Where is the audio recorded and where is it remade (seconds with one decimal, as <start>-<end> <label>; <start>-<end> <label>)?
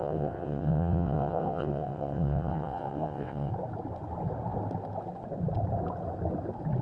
0.0-3.5 remade; 3.5-6.8 recorded